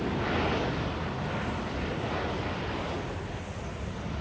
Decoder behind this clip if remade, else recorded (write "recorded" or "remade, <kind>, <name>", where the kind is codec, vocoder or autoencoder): recorded